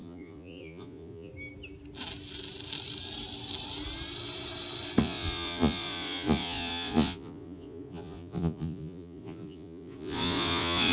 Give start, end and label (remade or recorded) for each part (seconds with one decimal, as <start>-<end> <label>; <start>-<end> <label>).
0.0-1.3 remade; 1.3-5.0 recorded; 5.0-10.9 remade